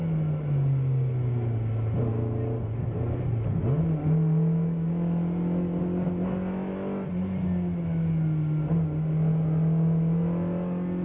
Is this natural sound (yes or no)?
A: yes